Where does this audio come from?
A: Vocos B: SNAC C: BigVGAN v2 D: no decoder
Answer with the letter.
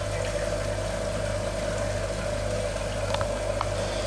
D